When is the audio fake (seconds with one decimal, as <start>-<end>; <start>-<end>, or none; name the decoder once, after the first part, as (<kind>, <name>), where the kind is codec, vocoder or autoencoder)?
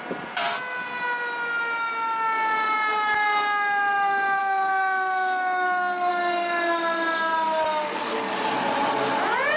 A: 4.4-6.1 (codec, DAC)